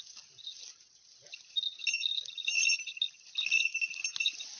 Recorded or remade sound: recorded